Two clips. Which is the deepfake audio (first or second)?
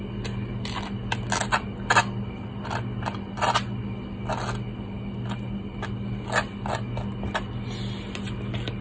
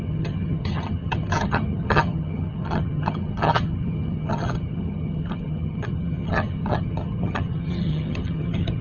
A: second